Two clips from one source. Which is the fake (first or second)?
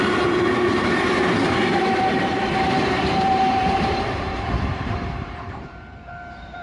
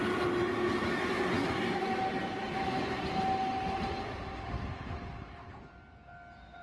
first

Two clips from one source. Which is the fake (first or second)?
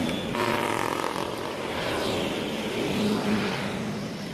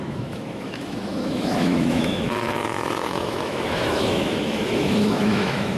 second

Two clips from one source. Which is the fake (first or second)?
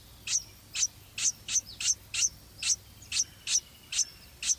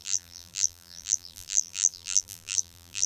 second